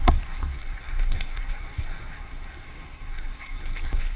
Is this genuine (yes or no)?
no